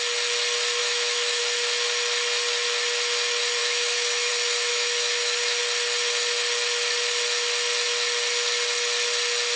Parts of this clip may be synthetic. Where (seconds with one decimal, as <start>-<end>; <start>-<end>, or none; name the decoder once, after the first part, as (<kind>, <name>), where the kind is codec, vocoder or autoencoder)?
0.8-1.4 (autoencoder, DAC-VAE); 3.6-4.3; 4.7-5.6